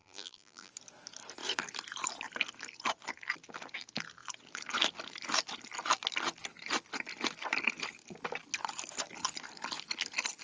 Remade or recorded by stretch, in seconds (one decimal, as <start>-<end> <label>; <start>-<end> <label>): 0.0-0.7 remade; 0.7-10.4 recorded

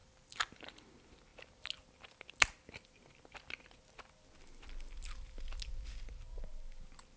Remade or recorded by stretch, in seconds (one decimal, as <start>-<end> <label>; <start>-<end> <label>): 0.0-0.7 remade; 0.7-7.2 recorded